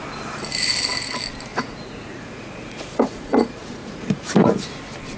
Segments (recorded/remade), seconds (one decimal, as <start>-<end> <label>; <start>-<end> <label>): 0.0-1.5 recorded; 1.5-4.5 remade; 4.5-5.2 recorded